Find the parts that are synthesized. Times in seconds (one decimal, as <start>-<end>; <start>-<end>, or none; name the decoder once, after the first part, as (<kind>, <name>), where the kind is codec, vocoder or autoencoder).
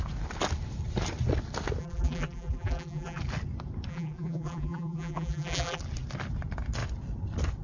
1.8-3.2 (vocoder, BigVGAN v2); 3.9-5.8